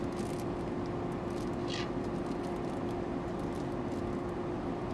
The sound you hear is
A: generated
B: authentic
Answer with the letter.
B